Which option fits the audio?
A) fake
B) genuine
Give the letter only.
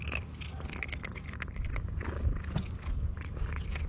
B